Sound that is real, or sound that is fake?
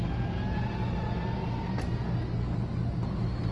real